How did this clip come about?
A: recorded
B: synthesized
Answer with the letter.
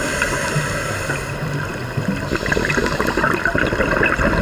A